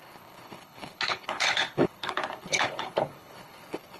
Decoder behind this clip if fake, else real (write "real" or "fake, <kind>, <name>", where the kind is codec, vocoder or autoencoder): fake, codec, HILCodec